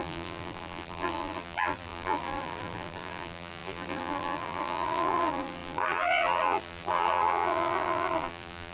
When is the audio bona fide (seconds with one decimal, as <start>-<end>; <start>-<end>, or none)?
none